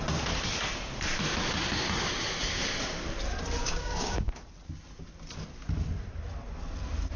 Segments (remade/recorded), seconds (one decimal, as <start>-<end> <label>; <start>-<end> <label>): 0.0-3.6 recorded; 3.6-4.3 remade; 4.3-7.2 recorded